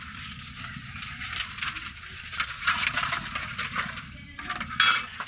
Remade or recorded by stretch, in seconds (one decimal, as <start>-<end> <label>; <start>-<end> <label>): 0.0-5.3 recorded